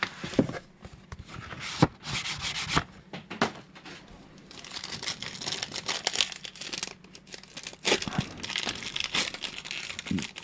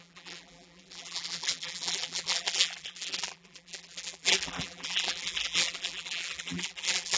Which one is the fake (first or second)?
second